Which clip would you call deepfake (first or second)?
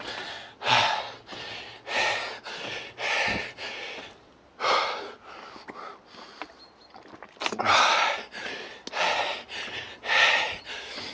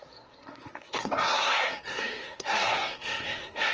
second